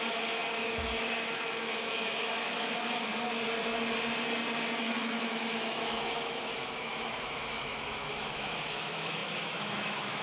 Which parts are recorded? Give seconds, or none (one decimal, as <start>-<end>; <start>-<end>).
3.1-4.8